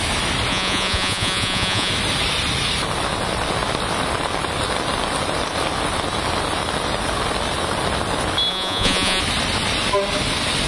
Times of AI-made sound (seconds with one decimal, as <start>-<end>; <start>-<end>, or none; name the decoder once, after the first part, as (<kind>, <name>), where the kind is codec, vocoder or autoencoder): 0.5-1.9 (vocoder, Vocos); 8.5-9.2